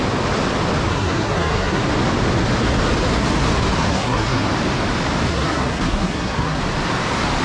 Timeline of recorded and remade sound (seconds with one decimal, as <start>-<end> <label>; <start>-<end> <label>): 0.0-0.9 recorded; 0.9-1.8 remade; 1.8-3.9 recorded; 3.9-4.5 remade; 4.5-5.3 recorded; 5.3-6.6 remade; 6.6-7.4 recorded